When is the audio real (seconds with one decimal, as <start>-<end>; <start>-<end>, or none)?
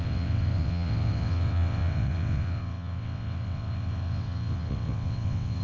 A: none